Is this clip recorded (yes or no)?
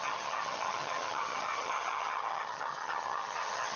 no